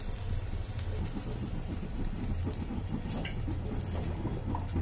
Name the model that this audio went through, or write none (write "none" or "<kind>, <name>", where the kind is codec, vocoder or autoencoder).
none